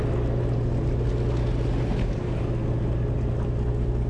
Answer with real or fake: real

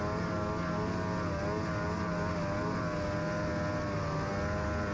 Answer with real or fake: real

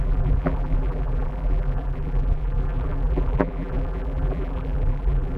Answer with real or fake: fake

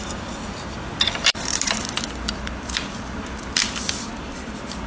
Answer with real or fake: fake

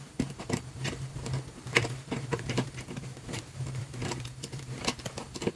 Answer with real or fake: fake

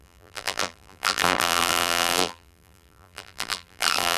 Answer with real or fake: fake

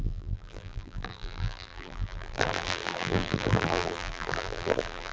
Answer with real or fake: fake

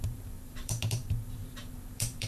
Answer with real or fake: fake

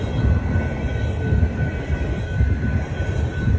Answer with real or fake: real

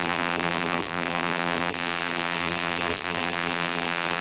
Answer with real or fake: fake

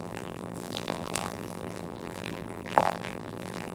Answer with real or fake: fake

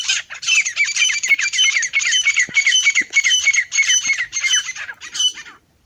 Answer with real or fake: fake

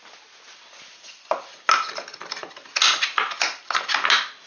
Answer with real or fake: real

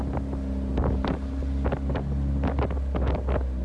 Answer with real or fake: real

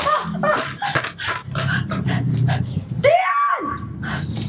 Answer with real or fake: fake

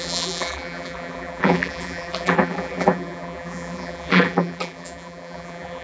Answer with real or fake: fake